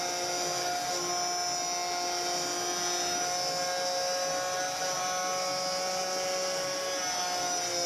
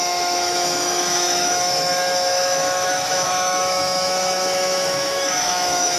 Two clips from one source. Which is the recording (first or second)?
first